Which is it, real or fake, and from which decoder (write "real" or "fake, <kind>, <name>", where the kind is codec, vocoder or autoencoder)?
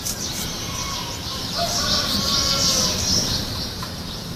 fake, vocoder, BigVGAN v2